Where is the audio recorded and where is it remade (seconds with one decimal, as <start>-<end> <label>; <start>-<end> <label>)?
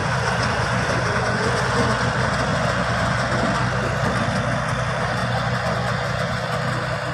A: 0.0-2.1 remade; 2.1-2.5 recorded; 2.5-3.2 remade; 3.2-5.2 recorded; 5.2-6.6 remade; 6.6-7.1 recorded